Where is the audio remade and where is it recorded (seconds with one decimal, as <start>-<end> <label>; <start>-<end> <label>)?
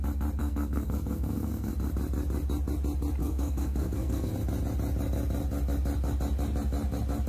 0.0-0.4 recorded; 0.4-1.7 remade; 1.7-3.2 recorded; 3.2-4.3 remade; 4.3-7.3 recorded